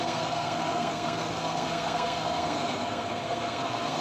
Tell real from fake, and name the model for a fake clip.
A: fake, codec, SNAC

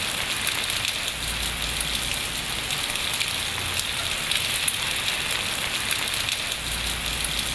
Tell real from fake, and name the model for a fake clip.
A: real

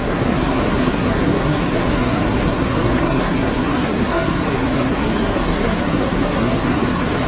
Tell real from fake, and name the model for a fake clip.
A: fake, codec, SNAC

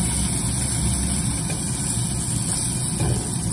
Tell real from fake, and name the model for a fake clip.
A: real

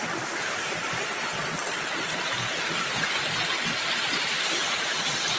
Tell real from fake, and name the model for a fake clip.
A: real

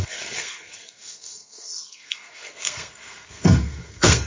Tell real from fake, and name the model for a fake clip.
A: fake, codec, SNAC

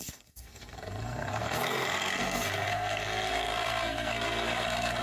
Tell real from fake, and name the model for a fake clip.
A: fake, codec, SNAC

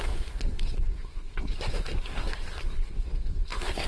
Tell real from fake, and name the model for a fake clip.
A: fake, codec, SNAC